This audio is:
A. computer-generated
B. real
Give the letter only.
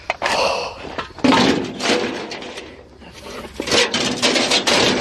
B